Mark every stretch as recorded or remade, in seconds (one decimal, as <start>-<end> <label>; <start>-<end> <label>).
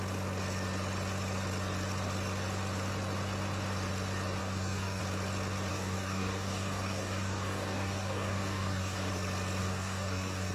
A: 0.0-4.4 recorded; 4.4-5.0 remade; 5.0-5.7 recorded; 5.7-9.1 remade; 9.1-9.6 recorded; 9.6-10.5 remade